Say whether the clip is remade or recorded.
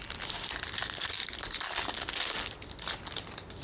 recorded